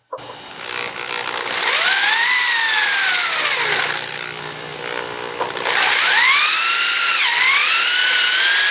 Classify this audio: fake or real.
real